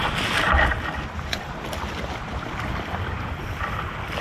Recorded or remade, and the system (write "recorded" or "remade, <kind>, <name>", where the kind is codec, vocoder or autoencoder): recorded